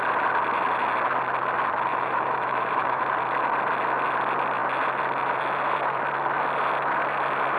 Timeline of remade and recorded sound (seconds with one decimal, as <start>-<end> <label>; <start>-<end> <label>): 0.0-1.9 recorded; 1.9-3.0 remade; 3.0-7.6 recorded